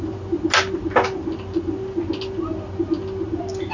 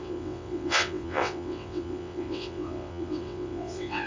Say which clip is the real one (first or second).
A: first